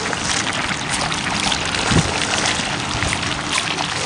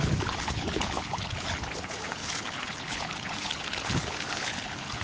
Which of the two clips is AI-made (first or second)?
second